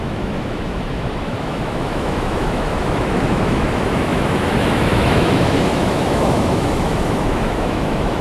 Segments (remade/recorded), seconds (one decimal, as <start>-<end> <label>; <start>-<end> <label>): 0.0-8.2 remade